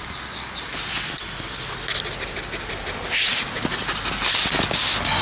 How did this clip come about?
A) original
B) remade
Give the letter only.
A